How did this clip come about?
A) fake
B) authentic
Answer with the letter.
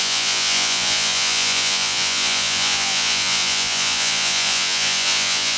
A